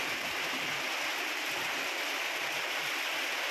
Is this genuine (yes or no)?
yes